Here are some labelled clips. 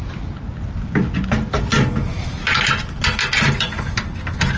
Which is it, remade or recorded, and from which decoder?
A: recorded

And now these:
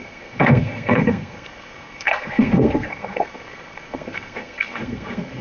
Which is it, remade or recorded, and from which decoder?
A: remade, codec, SNAC